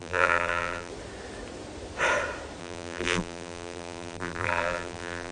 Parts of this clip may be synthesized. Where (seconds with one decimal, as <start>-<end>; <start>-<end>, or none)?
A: 0.0-0.9; 2.6-5.3

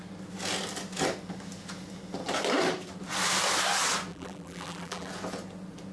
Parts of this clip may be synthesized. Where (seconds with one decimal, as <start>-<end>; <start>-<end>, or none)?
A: 4.1-5.1

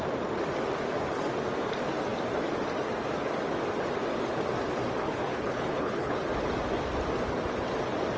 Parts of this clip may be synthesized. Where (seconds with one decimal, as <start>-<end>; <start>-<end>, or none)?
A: 5.0-6.2

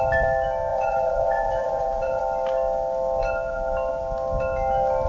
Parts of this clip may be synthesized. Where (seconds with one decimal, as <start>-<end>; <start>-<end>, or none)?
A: 0.7-2.2

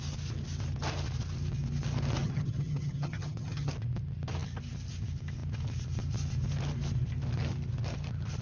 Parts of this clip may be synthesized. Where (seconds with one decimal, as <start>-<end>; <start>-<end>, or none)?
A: 2.2-3.7

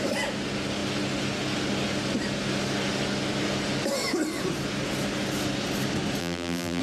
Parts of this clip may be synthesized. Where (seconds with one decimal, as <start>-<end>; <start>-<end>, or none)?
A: 6.2-6.8

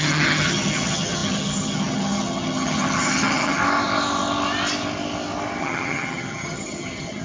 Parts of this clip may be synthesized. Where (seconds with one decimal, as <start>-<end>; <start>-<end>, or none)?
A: 0.0-3.6; 5.6-7.2

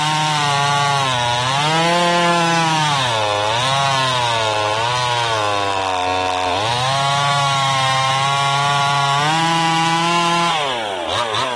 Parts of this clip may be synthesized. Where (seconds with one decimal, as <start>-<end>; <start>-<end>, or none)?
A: 2.3-3.1; 6.7-8.1